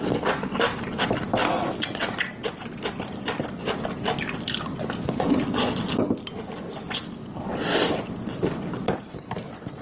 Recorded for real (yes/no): yes